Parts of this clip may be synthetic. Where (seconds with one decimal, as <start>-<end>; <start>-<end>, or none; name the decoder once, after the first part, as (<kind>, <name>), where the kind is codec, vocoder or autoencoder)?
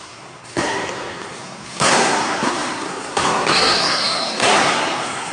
0.0-5.3 (codec, SNAC)